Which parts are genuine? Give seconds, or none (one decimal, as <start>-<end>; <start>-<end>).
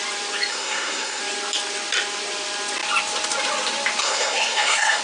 0.0-0.5; 1.2-4.0